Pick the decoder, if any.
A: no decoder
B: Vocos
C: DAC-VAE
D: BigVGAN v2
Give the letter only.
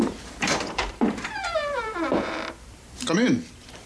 D